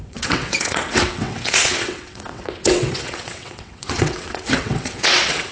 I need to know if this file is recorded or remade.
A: remade